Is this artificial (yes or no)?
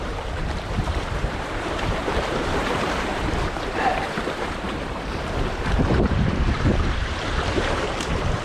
yes